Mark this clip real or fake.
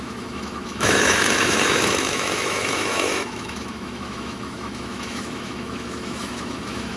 fake